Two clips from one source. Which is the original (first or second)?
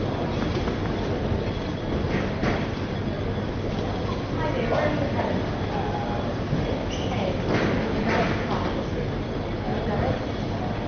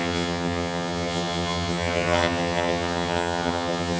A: first